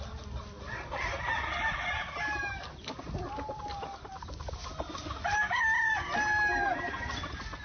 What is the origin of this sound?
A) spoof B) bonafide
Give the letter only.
B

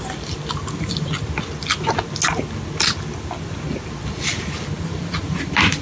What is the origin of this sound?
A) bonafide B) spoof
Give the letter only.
A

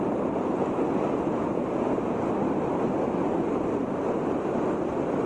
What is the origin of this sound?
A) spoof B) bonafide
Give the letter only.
B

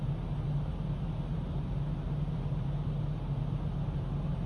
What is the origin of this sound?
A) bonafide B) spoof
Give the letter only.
A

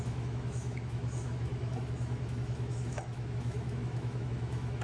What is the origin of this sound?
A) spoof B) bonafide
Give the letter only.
A